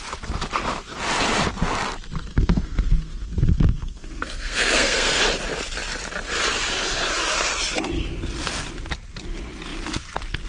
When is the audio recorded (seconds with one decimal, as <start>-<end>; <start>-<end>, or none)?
0.0-2.3; 5.2-10.5